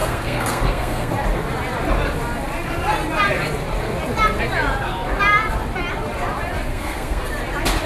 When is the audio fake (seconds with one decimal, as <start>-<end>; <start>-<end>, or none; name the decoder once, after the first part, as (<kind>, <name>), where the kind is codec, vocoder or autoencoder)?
0.0-1.1 (codec, SNAC); 6.7-7.3